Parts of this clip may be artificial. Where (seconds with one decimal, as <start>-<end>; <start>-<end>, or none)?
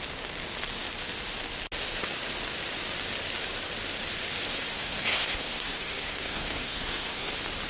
4.5-7.3